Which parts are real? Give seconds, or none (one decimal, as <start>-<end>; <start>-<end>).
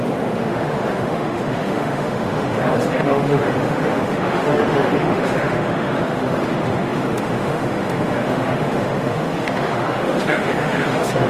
none